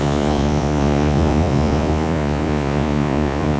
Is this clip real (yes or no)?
no